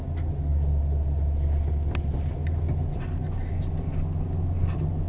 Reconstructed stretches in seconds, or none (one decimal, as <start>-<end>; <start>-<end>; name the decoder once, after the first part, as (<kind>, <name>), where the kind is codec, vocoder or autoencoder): none